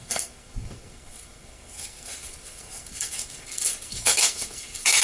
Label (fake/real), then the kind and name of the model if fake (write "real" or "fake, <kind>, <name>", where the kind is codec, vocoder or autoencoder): fake, codec, SNAC